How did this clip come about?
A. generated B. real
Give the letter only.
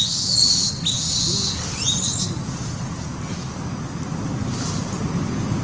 B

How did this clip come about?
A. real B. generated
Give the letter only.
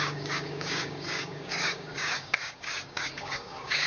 B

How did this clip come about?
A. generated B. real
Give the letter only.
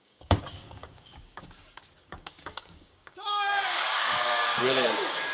A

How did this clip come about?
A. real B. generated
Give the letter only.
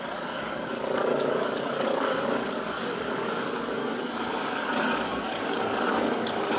B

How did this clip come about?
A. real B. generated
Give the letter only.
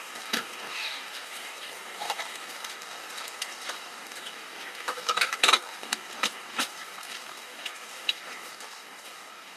B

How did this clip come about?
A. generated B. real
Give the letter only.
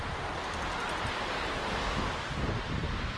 B